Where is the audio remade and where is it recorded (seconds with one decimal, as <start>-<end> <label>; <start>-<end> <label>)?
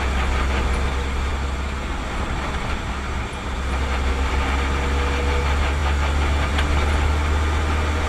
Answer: 0.0-8.1 recorded